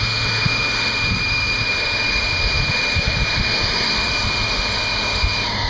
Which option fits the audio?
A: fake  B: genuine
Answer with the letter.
A